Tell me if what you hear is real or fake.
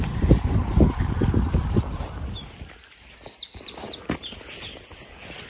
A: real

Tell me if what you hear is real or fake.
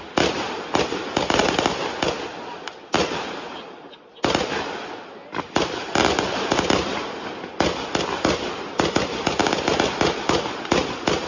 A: real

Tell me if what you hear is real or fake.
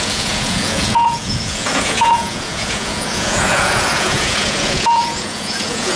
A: fake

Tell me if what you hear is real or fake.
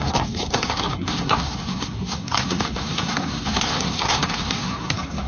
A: fake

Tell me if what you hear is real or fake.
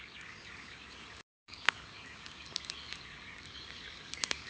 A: fake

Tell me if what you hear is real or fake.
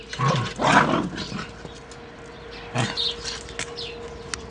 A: real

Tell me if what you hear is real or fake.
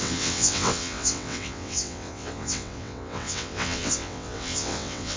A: fake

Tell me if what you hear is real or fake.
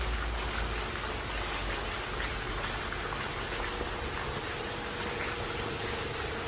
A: real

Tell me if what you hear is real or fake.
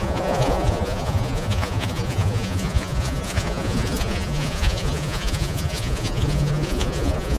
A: fake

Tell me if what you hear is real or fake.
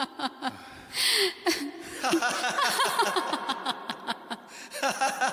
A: real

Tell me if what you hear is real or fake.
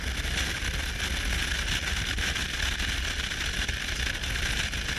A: real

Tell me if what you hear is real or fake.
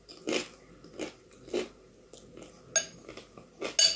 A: real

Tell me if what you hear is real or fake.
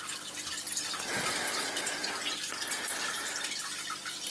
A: real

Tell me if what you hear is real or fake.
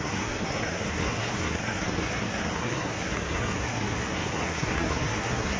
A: fake